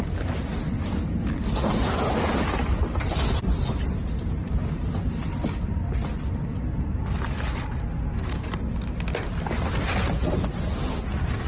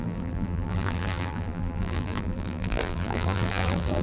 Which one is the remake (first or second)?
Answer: second